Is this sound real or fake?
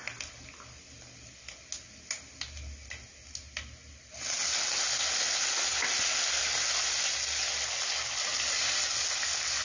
real